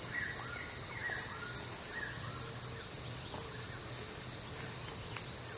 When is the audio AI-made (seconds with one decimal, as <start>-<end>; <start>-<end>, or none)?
none

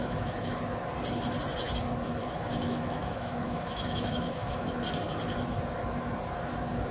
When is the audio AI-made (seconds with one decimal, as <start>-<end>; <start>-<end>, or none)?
0.0-0.6; 2.2-4.7